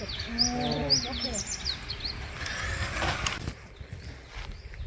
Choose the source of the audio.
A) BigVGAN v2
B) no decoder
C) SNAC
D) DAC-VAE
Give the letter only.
B